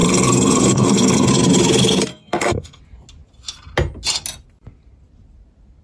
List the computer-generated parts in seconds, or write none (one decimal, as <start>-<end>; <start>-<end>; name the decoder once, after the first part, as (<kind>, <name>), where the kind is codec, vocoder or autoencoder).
0.0-1.3 (codec, SNAC); 2.1-2.8